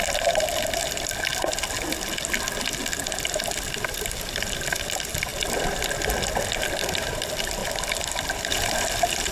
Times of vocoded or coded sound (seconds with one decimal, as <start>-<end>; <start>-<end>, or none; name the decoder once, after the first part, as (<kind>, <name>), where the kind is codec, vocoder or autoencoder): 0.0-1.3 (vocoder, BigVGAN v2); 3.2-5.3; 6.7-7.6; 8.3-9.3